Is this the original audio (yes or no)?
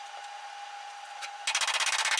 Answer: yes